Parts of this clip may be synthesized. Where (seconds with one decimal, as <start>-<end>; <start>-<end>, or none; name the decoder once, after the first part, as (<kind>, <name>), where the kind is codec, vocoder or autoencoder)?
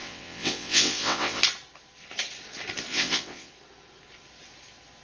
0.0-1.4 (vocoder, WaveNeXt); 2.9-3.5